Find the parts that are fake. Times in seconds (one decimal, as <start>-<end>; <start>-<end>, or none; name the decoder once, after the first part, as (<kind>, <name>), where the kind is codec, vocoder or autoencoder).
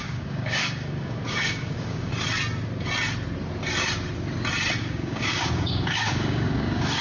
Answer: 0.0-2.1 (codec, DAC); 4.8-7.0